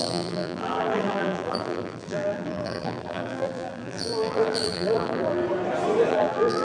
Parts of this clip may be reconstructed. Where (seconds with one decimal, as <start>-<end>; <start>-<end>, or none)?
0.0-5.4; 6.1-6.6